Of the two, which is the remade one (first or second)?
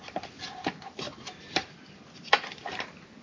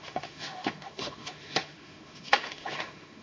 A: second